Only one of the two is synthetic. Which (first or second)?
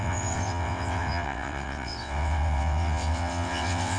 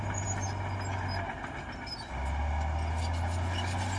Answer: first